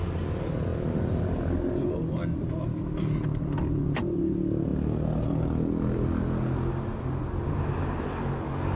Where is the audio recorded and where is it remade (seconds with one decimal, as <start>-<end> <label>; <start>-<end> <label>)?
0.0-8.8 recorded